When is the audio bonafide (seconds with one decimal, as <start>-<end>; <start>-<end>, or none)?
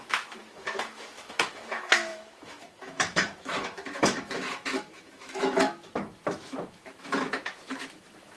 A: none